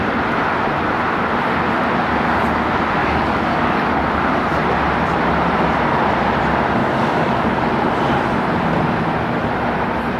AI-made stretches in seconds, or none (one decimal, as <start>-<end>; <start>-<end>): 3.0-4.0; 6.8-7.5